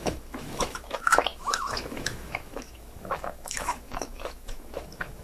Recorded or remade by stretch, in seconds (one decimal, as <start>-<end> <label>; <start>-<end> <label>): 0.0-5.2 remade